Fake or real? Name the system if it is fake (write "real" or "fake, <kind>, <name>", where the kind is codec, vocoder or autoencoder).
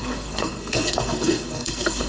fake, codec, SNAC